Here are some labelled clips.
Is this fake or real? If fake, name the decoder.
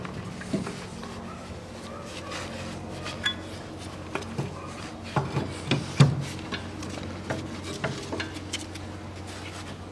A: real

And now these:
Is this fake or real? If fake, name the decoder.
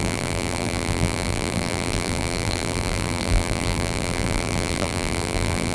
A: fake, vocoder, BigVGAN v2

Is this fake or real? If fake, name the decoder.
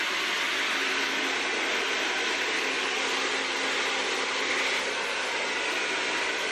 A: real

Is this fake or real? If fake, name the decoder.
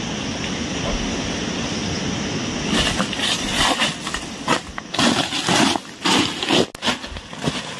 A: real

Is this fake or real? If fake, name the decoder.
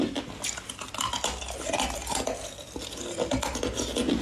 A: real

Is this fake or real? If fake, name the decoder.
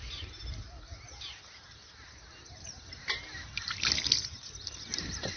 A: real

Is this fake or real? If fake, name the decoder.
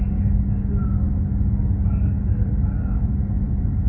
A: real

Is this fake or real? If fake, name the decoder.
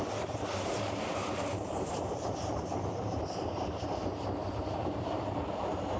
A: fake, vocoder, BigVGAN v2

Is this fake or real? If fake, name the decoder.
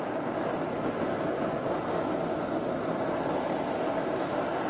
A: real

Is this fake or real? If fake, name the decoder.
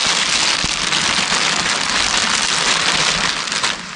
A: real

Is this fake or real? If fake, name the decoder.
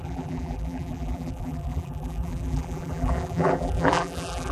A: fake, vocoder, BigVGAN v2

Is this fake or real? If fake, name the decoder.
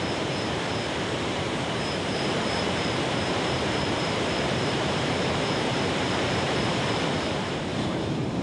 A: fake, vocoder, BigVGAN v2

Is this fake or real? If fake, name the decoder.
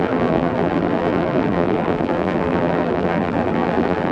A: fake, vocoder, BigVGAN v2